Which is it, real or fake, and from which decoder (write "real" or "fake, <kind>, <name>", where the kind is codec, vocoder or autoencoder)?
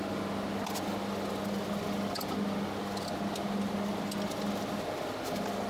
real